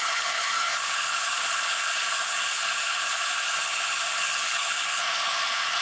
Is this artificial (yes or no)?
yes